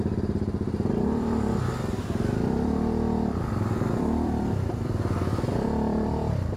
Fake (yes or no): yes